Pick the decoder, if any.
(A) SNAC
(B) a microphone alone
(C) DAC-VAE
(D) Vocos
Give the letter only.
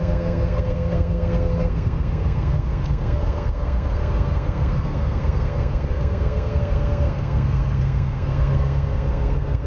A